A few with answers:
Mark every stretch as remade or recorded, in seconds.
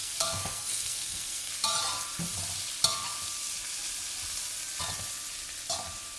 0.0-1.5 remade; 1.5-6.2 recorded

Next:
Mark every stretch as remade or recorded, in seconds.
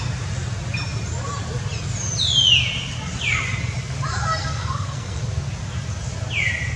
0.0-4.4 recorded; 4.4-5.2 remade; 5.2-6.8 recorded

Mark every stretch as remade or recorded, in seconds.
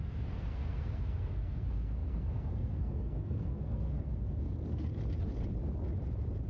0.0-4.9 remade; 4.9-6.5 recorded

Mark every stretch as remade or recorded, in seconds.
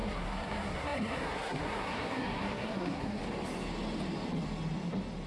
0.0-3.2 remade; 3.2-5.3 recorded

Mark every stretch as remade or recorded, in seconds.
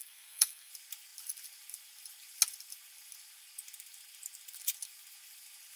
0.0-0.7 remade; 0.7-5.8 recorded